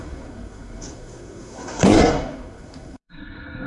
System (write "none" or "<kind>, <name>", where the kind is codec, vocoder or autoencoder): codec, SNAC